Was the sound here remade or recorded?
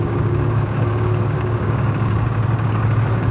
remade